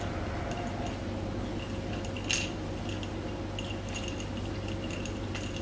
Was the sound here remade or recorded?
recorded